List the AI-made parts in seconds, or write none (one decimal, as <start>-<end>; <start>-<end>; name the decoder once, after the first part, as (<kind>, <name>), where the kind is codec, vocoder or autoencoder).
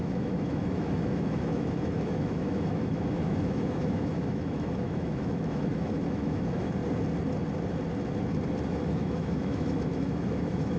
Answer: 0.0-6.8 (autoencoder, DAC-VAE); 8.7-10.8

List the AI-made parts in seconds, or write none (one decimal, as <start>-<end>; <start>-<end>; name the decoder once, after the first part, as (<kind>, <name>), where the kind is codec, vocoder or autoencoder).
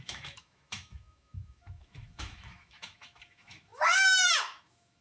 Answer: 0.0-5.0 (autoencoder, DAC-VAE)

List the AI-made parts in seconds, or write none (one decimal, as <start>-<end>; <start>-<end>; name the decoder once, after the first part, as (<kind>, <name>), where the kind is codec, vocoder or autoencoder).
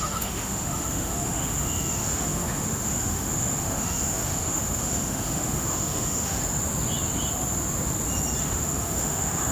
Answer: 0.0-6.4 (autoencoder, DAC-VAE); 8.4-9.5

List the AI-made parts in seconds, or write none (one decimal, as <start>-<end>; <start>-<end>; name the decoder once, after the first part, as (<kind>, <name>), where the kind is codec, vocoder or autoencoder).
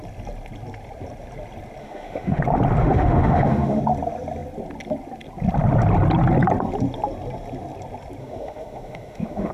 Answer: 1.8-2.4 (autoencoder, DAC-VAE); 2.8-3.8; 8.2-9.5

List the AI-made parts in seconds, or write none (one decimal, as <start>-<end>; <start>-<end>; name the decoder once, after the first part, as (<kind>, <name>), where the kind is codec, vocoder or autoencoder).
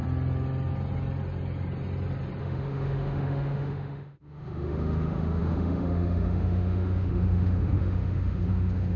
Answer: 2.4-9.0 (autoencoder, DAC-VAE)